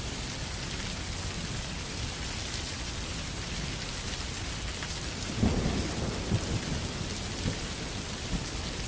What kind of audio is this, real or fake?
real